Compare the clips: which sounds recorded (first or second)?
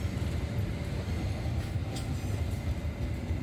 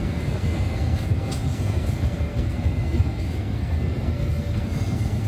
first